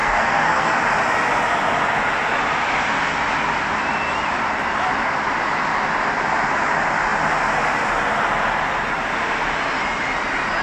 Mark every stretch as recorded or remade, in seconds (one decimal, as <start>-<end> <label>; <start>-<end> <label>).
0.0-0.8 remade; 0.8-10.6 recorded